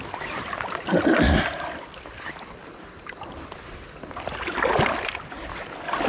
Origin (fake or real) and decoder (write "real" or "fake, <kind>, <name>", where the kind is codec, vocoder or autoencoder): real